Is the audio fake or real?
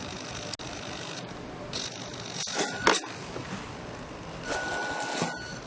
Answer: real